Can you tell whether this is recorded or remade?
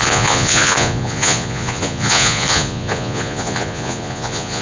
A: remade